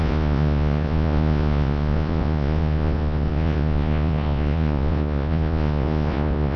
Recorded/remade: remade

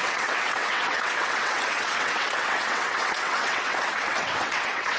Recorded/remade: remade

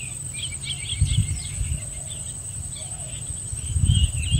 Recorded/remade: recorded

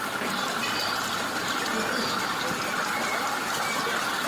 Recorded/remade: recorded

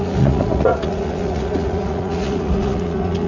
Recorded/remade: remade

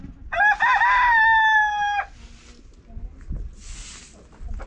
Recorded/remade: recorded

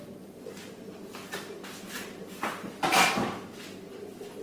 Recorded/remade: recorded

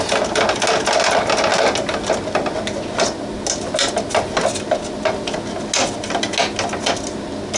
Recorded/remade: recorded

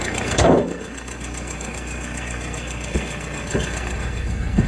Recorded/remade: remade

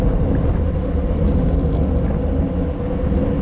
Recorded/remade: recorded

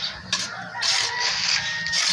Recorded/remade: recorded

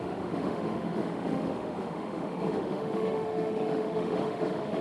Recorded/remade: remade